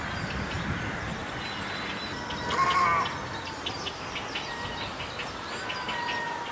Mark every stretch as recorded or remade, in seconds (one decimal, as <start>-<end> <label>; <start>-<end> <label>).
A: 0.0-6.5 recorded